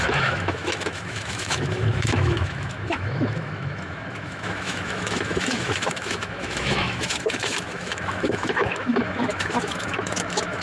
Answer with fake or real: fake